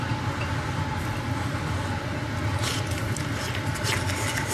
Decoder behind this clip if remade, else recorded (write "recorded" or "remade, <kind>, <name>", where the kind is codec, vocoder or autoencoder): recorded